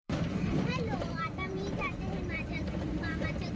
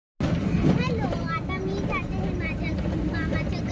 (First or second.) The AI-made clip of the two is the first